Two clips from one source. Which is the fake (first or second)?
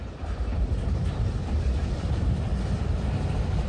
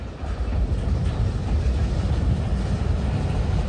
first